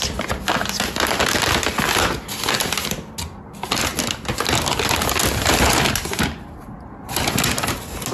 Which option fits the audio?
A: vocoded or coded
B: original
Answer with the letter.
B